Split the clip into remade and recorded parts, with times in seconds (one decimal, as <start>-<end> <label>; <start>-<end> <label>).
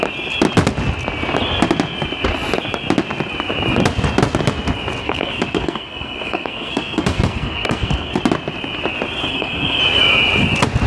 0.0-5.0 recorded; 5.0-8.2 remade; 8.2-9.3 recorded; 9.3-9.8 remade; 9.8-10.9 recorded